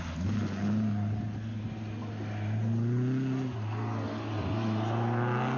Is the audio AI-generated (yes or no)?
no